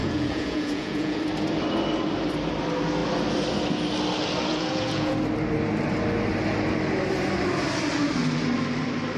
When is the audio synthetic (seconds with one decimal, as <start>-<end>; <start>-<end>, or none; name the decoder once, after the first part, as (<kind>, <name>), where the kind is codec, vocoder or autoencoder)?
0.0-1.2 (vocoder, Vocos); 4.5-5.1

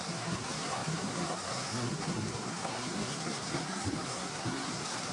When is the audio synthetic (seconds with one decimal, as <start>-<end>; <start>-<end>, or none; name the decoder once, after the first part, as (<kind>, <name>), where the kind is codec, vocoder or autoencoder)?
0.0-5.1 (codec, SNAC)